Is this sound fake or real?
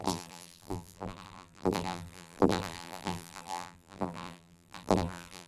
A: fake